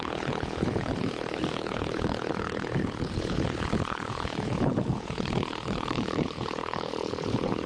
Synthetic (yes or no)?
yes